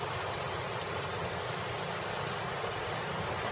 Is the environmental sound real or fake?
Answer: real